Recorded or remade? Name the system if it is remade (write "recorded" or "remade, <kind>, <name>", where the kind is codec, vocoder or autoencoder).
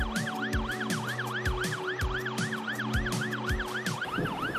recorded